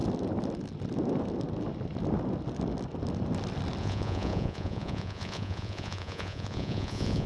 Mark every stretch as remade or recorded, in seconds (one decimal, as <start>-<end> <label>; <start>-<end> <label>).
0.0-3.8 recorded; 3.8-7.3 remade